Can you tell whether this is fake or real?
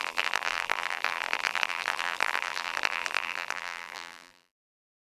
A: fake